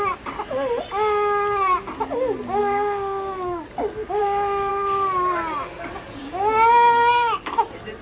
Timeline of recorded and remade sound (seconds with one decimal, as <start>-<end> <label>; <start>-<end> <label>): 0.0-2.6 recorded; 2.6-3.6 remade; 3.6-4.2 recorded; 4.2-4.7 remade; 4.7-6.2 recorded; 6.2-7.5 remade; 7.5-8.0 recorded